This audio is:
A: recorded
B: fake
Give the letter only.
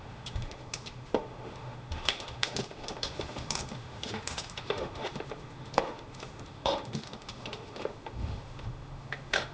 B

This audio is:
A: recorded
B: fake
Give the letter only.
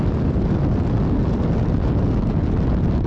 A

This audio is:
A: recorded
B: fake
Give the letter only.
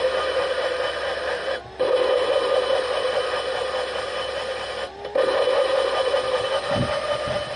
A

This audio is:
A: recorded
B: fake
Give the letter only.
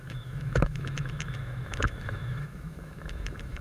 B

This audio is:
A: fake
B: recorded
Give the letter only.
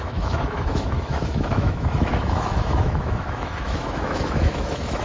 A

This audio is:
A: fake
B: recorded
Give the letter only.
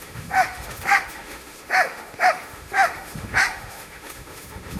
A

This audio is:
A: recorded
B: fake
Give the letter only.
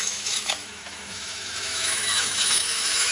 B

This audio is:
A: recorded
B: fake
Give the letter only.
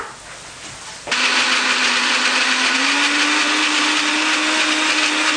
A